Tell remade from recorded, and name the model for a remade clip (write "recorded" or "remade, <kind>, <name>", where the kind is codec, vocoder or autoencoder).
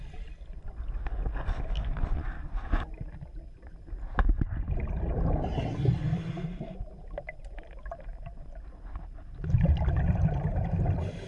recorded